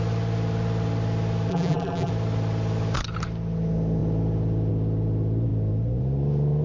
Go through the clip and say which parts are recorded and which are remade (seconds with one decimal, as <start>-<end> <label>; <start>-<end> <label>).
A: 0.0-1.5 recorded; 1.5-2.1 remade; 2.1-6.6 recorded